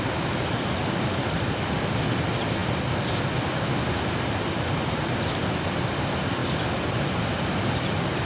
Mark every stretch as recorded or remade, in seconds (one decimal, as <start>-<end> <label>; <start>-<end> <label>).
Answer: 0.0-8.3 recorded